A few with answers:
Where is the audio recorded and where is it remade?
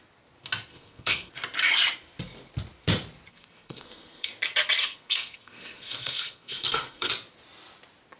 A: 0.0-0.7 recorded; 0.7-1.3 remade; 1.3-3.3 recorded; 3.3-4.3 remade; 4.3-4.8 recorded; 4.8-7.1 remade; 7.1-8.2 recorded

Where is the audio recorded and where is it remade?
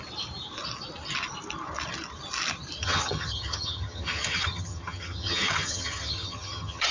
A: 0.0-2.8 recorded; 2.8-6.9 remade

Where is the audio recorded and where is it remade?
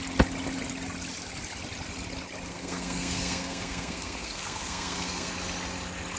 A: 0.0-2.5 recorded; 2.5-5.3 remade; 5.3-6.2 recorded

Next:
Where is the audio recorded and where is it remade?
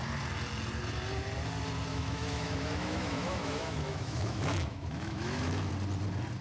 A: 0.0-1.9 recorded; 1.9-5.7 remade; 5.7-6.4 recorded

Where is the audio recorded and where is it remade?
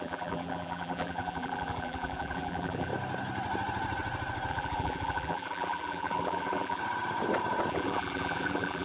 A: 0.0-2.9 remade; 2.9-4.5 recorded; 4.5-6.8 remade; 6.8-7.7 recorded; 7.7-8.8 remade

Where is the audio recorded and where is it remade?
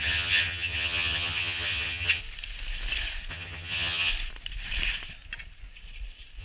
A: 0.0-2.2 remade; 2.2-3.3 recorded; 3.3-4.1 remade; 4.1-6.4 recorded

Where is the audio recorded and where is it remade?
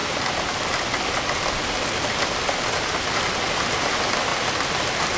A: 0.0-5.2 recorded